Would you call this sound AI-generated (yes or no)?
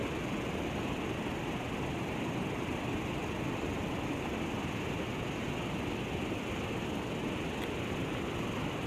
no